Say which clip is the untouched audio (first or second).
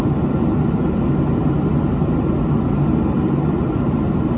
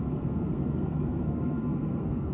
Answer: first